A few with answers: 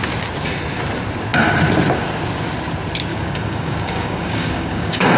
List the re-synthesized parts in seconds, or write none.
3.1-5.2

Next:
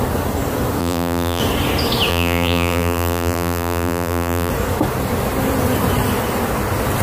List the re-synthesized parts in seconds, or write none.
0.8-1.4; 2.1-4.5